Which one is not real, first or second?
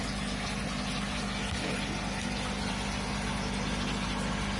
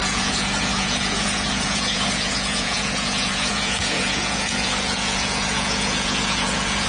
second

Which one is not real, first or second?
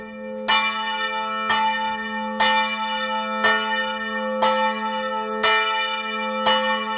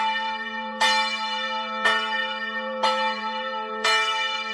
second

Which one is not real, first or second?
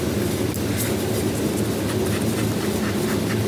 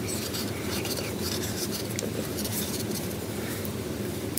second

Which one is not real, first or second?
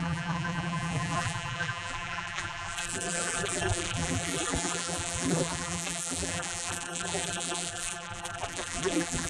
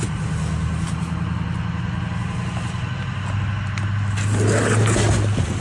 first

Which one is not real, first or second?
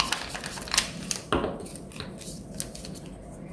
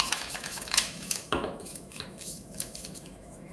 second